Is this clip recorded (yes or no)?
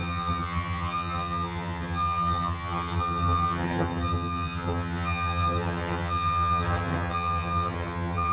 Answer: no